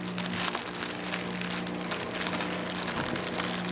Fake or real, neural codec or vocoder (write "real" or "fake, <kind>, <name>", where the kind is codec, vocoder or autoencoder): real